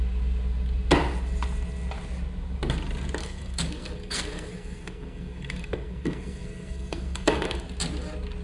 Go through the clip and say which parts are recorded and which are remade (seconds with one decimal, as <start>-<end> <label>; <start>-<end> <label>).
0.0-3.2 recorded; 3.2-7.6 remade; 7.6-8.4 recorded

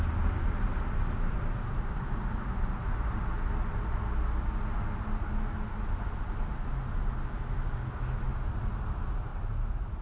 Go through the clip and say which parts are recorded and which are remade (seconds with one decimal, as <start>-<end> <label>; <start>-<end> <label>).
0.0-9.3 recorded; 9.3-10.0 remade

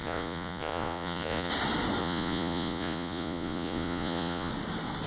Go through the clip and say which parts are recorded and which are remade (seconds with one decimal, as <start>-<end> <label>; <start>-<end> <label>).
0.0-1.5 remade; 1.5-2.0 recorded; 2.0-4.5 remade; 4.5-5.1 recorded

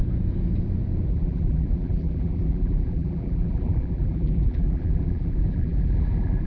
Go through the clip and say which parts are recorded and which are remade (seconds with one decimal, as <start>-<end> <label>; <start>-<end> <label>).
0.0-1.1 recorded; 1.1-6.5 remade